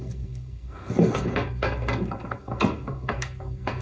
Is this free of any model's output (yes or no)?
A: no